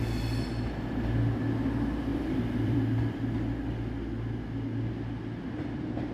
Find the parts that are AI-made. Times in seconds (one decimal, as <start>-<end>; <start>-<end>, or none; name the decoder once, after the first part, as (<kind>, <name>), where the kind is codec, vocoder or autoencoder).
2.1-3.3 (vocoder, BigVGAN v2)